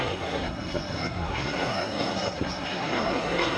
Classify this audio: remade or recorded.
remade